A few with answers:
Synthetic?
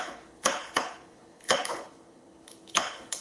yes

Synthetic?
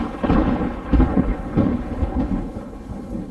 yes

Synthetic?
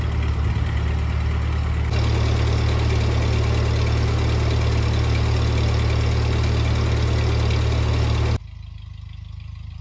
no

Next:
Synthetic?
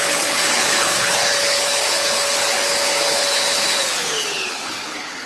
yes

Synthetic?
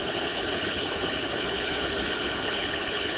yes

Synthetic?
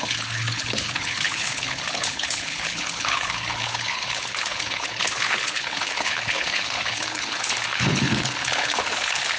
yes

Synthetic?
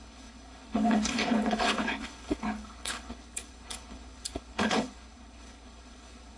yes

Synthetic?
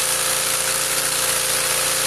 no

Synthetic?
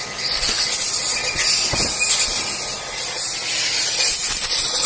no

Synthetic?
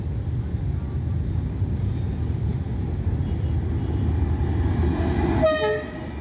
no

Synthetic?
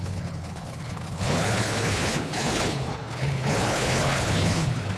yes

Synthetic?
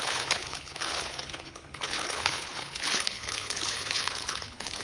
yes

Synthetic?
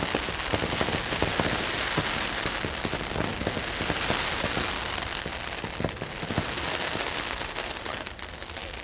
no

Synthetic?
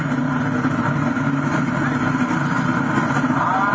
no